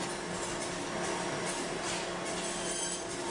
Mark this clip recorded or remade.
recorded